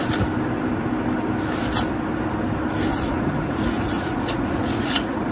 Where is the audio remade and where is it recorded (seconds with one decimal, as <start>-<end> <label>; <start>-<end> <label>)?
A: 0.0-2.9 recorded; 2.9-5.3 remade